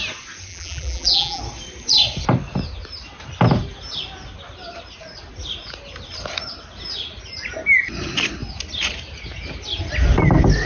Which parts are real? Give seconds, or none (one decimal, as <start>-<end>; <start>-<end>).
0.0-0.5; 1.4-10.7